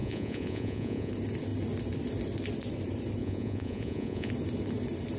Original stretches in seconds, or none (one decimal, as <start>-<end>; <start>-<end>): 1.1-3.2; 4.3-5.2